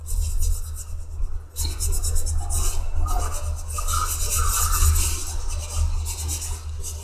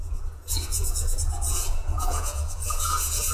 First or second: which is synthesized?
second